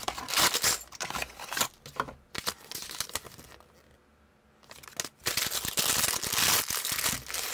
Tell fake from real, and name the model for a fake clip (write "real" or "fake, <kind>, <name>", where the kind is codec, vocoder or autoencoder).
real